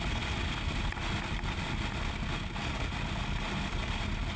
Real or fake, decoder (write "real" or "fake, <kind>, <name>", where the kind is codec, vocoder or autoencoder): real